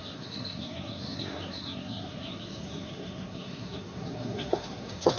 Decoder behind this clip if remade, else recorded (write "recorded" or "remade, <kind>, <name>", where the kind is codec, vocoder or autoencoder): remade, codec, SNAC